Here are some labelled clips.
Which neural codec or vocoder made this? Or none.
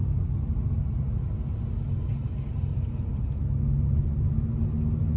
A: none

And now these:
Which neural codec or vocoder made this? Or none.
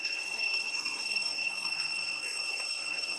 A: codec, SNAC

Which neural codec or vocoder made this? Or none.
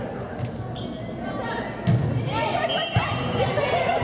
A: none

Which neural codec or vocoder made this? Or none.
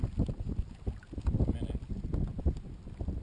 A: none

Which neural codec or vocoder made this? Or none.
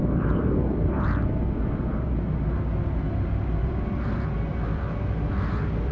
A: none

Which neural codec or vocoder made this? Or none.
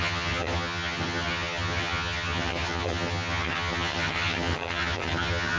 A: vocoder, HiFi-GAN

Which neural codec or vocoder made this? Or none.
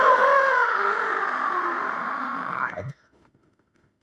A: autoencoder, DAC-VAE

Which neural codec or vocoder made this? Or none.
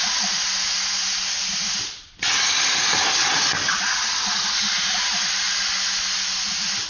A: none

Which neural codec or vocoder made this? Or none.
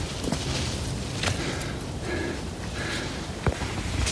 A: none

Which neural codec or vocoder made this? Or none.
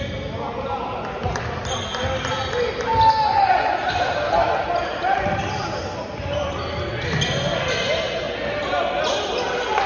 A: none